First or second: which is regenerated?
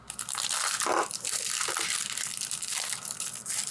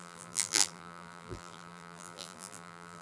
second